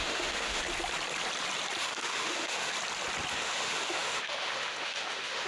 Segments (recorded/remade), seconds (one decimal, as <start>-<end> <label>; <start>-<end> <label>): 0.0-0.6 remade; 0.6-1.8 recorded; 1.8-2.7 remade; 2.7-3.3 recorded; 3.3-5.5 remade